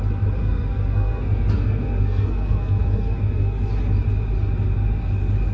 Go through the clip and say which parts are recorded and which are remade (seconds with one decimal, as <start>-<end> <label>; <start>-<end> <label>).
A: 0.0-0.4 recorded; 0.4-3.7 remade; 3.7-5.5 recorded